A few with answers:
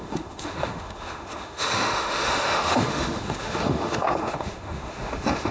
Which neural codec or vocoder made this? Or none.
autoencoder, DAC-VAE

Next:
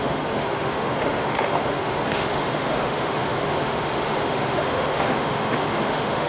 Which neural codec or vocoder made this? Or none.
autoencoder, DAC-VAE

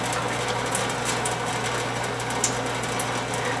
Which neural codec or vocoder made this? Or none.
none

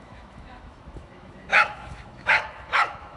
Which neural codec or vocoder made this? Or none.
autoencoder, DAC-VAE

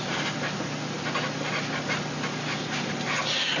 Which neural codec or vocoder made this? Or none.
none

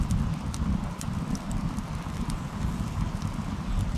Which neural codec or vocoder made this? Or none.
none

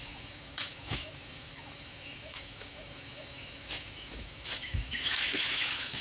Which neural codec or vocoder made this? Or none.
autoencoder, DAC-VAE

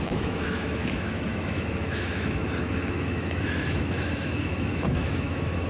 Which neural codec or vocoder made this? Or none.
autoencoder, DAC-VAE